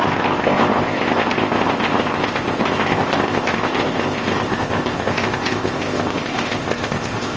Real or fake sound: fake